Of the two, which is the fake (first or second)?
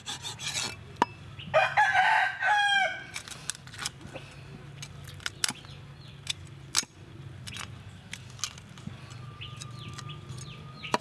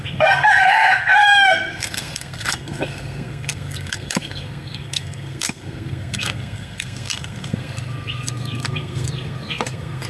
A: second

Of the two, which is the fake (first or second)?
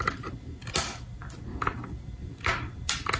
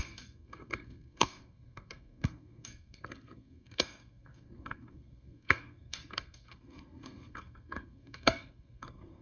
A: second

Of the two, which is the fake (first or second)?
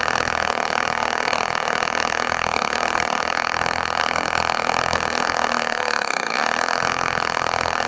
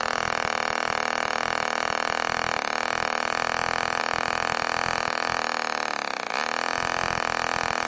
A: first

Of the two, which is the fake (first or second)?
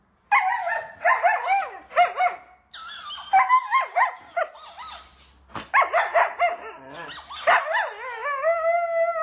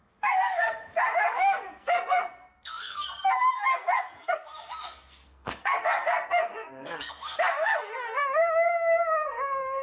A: second